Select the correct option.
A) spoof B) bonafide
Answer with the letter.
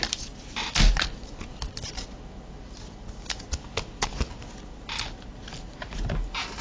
B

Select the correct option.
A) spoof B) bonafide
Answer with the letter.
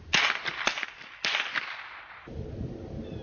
B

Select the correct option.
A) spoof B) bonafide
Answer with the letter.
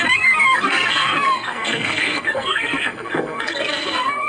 A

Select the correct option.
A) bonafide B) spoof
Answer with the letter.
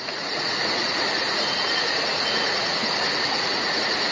B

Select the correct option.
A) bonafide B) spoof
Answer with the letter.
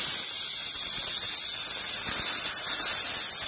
A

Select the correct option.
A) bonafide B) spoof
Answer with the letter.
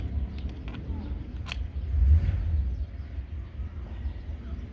A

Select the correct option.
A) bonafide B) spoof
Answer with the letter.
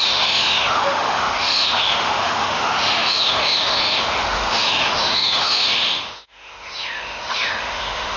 B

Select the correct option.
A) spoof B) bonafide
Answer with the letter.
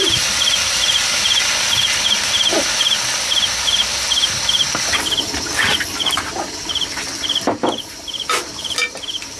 B